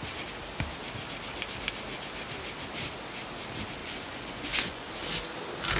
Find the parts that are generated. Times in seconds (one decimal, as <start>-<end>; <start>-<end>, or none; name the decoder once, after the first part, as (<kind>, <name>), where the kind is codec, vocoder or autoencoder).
3.8-4.9 (vocoder, Vocos)